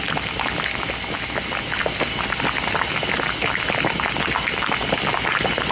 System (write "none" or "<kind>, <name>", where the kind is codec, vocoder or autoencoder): none